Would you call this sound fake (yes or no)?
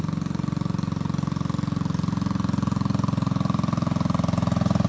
no